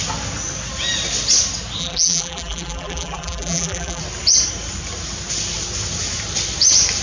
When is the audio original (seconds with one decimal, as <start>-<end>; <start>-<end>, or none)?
0.0-1.8; 4.0-7.0